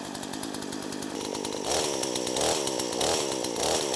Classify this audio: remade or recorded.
recorded